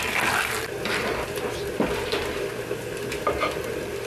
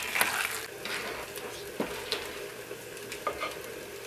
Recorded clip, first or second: second